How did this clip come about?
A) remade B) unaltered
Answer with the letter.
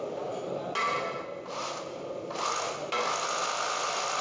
B